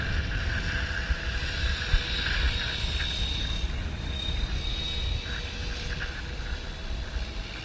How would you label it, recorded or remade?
recorded